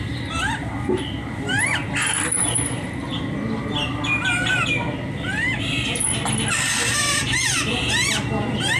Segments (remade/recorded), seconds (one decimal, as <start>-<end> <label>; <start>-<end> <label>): 0.0-2.4 recorded; 2.4-3.2 remade; 3.2-7.2 recorded; 7.2-7.8 remade; 7.8-8.8 recorded